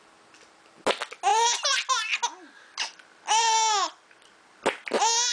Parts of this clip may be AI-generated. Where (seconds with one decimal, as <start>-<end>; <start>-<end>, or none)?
none